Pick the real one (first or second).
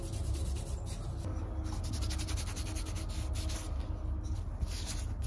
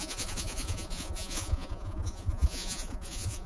first